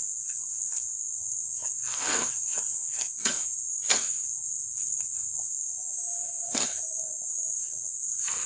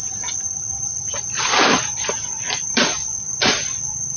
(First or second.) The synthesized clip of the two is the first